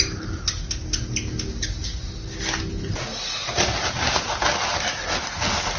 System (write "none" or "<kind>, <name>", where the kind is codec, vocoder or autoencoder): none